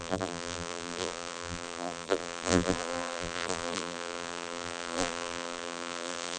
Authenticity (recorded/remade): remade